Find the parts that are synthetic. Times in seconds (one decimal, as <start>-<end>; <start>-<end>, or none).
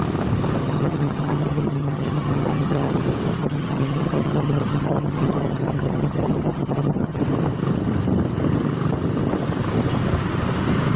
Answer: 0.6-3.0; 3.4-7.2